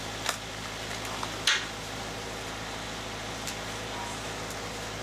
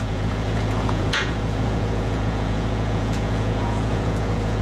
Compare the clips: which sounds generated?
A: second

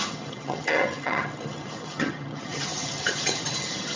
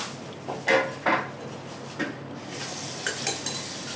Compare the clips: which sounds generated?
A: first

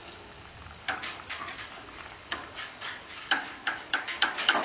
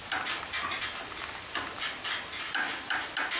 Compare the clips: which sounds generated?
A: first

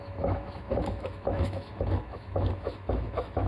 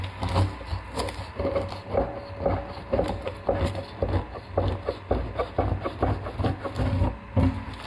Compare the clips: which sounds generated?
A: first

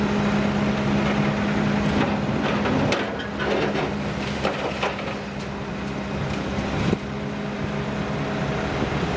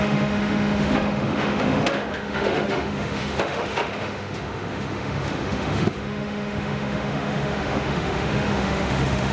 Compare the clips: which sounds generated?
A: second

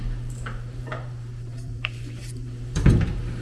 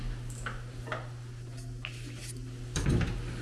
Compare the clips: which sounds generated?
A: first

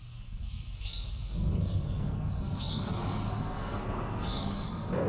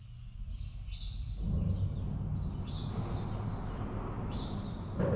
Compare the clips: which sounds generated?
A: first